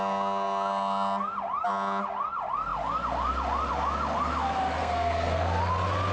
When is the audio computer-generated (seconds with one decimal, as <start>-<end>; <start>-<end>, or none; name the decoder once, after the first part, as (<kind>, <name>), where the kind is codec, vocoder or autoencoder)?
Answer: 4.8-5.6 (codec, SNAC)